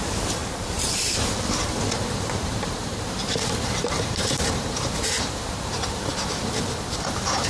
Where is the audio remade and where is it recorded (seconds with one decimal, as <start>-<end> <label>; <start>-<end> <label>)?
0.0-0.4 recorded; 0.4-1.4 remade; 1.4-2.0 recorded; 2.0-6.1 remade; 6.1-7.5 recorded